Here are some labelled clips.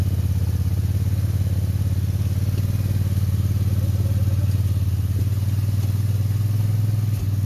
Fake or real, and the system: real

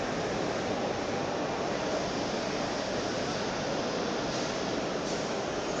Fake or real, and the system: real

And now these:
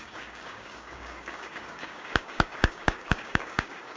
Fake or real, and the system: fake, codec, DAC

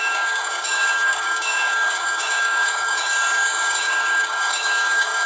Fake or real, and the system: fake, codec, DAC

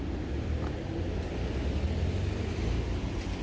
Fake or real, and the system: real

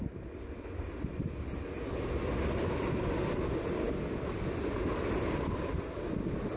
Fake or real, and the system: real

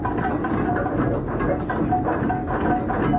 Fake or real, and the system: real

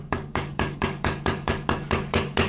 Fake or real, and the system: fake, codec, DAC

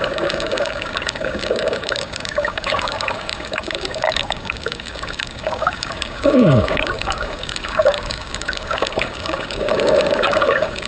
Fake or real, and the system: fake, codec, DAC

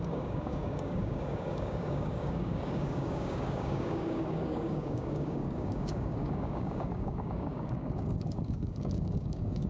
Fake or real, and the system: fake, codec, DAC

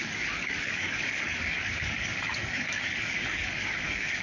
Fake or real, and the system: fake, codec, DAC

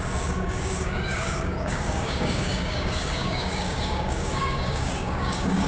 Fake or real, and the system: fake, codec, DAC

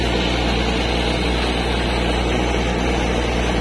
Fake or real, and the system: real